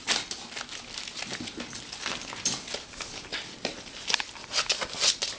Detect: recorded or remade recorded